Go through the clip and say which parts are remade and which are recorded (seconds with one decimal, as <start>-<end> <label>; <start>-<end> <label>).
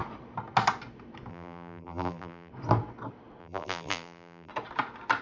0.0-1.3 recorded; 1.3-2.5 remade; 2.5-3.4 recorded; 3.4-4.5 remade; 4.5-5.2 recorded